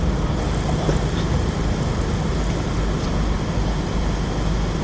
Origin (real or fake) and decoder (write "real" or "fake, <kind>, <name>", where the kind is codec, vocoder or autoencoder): real